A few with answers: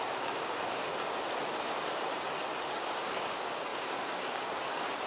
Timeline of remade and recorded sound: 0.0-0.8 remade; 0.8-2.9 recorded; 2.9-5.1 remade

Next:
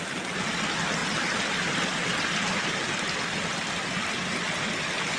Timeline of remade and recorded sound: 0.0-5.2 recorded

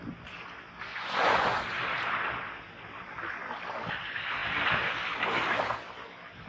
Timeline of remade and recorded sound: 0.0-0.9 recorded; 0.9-1.6 remade; 1.6-6.5 recorded

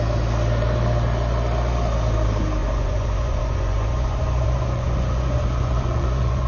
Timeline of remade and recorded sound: 0.0-2.6 recorded; 2.6-6.5 remade

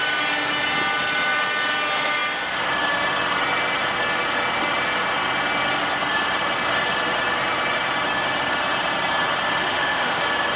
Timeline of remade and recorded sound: 0.0-9.6 recorded; 9.6-10.2 remade; 10.2-10.6 recorded

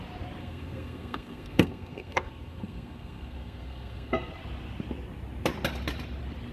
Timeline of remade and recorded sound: 0.0-0.4 recorded; 0.4-4.3 remade; 4.3-6.5 recorded

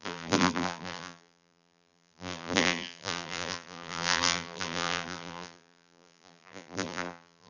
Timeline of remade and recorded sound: 0.0-7.5 remade

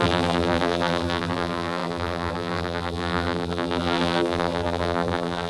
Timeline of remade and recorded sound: 0.0-5.5 remade